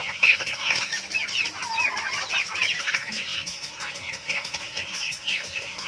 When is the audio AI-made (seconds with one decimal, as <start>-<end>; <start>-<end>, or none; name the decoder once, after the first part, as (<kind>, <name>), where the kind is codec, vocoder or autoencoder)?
0.0-0.9 (codec, SNAC); 2.8-5.9